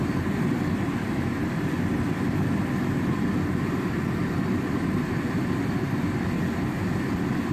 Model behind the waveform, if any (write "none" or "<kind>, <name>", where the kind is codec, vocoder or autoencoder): none